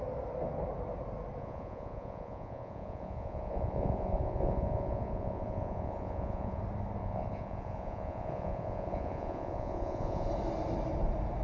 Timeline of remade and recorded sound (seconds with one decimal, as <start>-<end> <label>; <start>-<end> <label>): 0.0-1.4 recorded; 1.4-6.6 remade; 6.6-7.0 recorded; 7.0-10.3 remade; 10.3-11.4 recorded